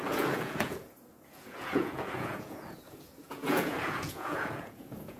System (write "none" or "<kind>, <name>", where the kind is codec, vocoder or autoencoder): vocoder, Vocos